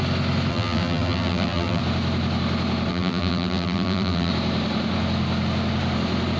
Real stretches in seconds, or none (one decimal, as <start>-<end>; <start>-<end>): 0.0-0.5; 1.8-2.9; 4.3-6.4